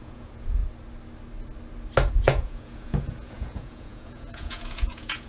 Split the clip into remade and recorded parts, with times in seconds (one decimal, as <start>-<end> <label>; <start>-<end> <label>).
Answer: 0.0-0.6 remade; 0.6-2.1 recorded; 2.1-5.3 remade